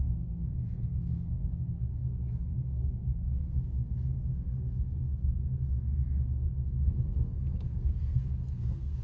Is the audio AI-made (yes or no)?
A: yes